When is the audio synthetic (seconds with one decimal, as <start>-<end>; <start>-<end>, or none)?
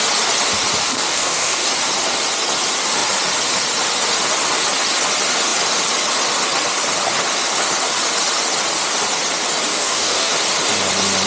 0.8-1.7; 9.7-10.3